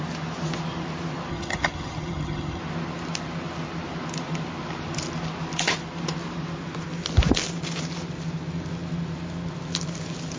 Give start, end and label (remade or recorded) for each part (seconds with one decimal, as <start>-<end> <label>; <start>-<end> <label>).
0.0-1.3 recorded; 1.3-2.6 remade; 2.6-10.4 recorded